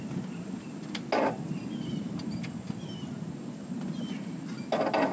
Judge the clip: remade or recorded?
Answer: recorded